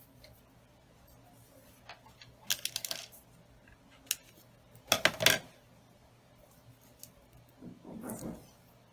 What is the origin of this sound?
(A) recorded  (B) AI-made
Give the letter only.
A